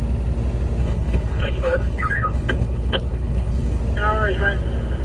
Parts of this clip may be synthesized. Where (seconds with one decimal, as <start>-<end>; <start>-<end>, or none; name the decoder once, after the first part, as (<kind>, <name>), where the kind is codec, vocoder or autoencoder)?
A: 0.8-3.8 (codec, HILCodec)